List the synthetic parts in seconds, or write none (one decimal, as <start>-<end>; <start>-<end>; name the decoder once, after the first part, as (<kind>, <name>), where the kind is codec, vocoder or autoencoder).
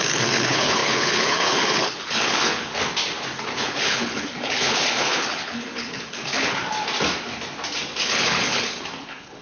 0.0-2.7 (codec, HILCodec); 3.4-6.6; 7.9-9.4